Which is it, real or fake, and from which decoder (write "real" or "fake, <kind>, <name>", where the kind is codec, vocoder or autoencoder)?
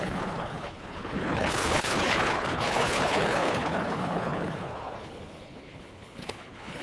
fake, codec, HILCodec